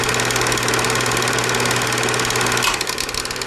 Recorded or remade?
recorded